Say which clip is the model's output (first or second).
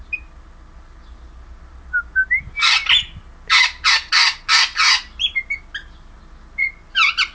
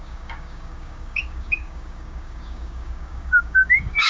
second